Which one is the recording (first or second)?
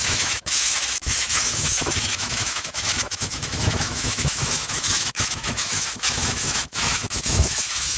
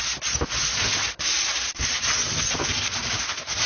second